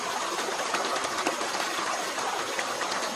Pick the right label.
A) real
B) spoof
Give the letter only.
A